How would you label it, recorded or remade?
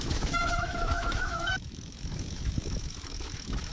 remade